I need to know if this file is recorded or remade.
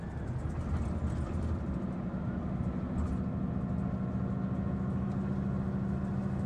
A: recorded